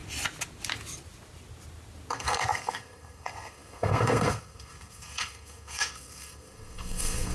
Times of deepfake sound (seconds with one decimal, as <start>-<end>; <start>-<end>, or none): 2.1-7.3